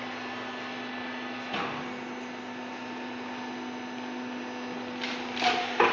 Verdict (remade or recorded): recorded